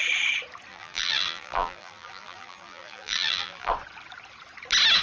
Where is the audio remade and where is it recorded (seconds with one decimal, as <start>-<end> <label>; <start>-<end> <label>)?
0.0-0.7 recorded; 0.7-3.7 remade; 3.7-5.0 recorded